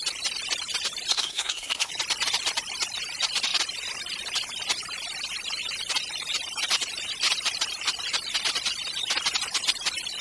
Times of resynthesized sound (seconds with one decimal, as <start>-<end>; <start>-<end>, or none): 1.1-1.9